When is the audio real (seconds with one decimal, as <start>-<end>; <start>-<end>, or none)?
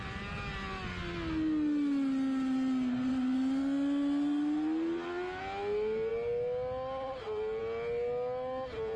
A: 0.0-9.0